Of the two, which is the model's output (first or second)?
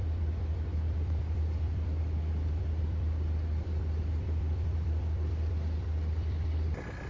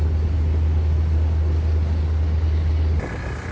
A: first